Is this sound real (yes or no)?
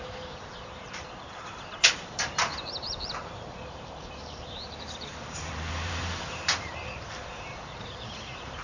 no